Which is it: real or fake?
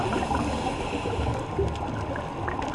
real